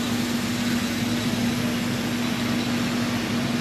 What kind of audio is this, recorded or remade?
recorded